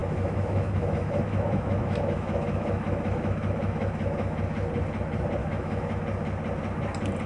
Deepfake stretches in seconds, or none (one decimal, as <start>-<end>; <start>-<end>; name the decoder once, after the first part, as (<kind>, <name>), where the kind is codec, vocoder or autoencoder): 0.0-4.4 (autoencoder, DAC-VAE); 5.4-6.0